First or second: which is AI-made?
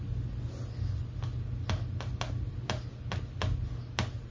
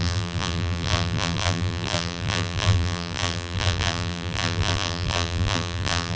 second